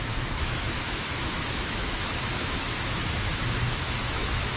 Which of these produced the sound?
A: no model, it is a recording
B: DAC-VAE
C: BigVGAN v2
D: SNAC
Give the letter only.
B